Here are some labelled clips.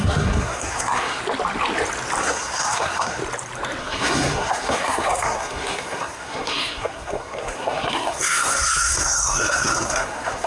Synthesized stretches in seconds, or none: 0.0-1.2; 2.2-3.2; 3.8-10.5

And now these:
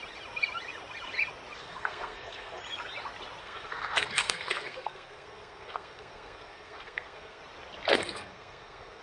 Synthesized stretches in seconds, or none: 1.6-2.6; 3.4-7.4; 7.9-9.0